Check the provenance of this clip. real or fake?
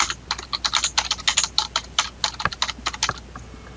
real